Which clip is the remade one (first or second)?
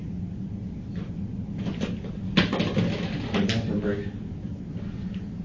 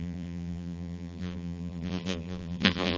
second